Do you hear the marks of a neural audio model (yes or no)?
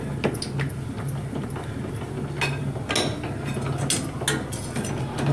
no